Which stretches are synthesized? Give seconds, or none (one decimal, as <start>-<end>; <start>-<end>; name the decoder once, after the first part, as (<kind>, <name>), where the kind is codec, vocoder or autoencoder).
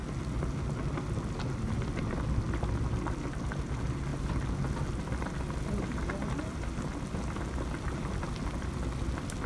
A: none